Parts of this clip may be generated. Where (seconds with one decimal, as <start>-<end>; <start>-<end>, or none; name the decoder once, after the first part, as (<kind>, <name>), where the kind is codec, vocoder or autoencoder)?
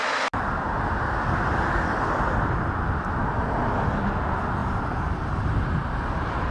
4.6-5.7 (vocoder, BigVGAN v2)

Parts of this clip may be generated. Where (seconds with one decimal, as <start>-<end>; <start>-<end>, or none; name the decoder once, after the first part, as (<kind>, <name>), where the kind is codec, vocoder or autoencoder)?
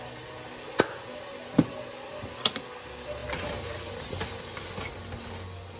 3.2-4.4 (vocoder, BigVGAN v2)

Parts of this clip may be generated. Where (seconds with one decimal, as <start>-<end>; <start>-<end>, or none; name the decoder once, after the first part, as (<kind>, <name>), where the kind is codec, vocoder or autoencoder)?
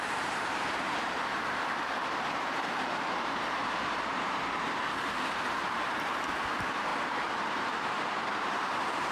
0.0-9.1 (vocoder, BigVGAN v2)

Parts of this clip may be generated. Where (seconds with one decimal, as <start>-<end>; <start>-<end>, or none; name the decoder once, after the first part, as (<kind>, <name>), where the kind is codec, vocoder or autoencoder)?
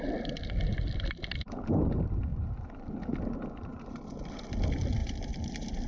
2.3-3.0 (vocoder, BigVGAN v2); 3.7-4.5; 5.0-5.9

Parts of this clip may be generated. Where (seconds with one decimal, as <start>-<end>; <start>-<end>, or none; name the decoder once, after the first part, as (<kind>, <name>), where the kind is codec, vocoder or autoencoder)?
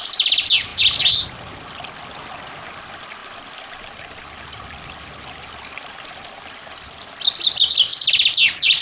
0.7-1.4 (vocoder, BigVGAN v2); 3.2-7.5; 7.9-8.8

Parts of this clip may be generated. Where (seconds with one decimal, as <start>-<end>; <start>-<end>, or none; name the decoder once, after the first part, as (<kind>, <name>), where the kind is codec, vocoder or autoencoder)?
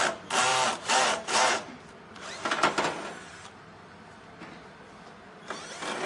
0.5-1.8 (vocoder, BigVGAN v2)